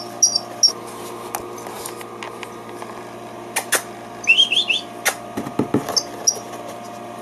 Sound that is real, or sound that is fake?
real